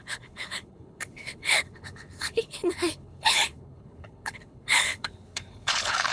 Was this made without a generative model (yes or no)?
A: no